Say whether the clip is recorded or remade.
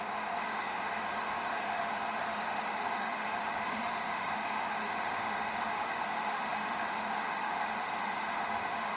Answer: remade